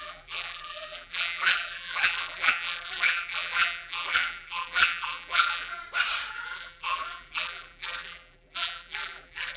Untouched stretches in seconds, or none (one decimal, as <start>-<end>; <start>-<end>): 5.8-6.3